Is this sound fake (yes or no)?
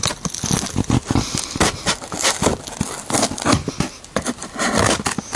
no